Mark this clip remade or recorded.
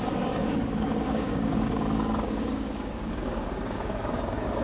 remade